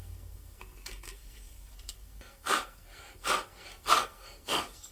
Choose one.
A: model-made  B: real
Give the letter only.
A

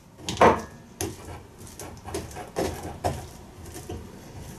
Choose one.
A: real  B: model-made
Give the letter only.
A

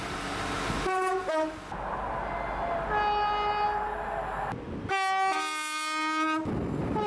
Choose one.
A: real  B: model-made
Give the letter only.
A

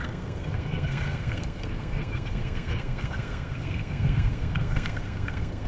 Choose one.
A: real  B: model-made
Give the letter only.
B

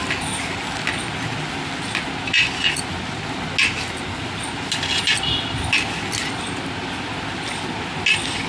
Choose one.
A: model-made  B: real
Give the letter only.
B